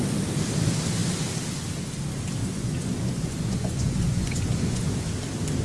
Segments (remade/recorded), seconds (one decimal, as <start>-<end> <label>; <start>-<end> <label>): 0.0-2.4 recorded; 2.4-5.0 remade; 5.0-5.6 recorded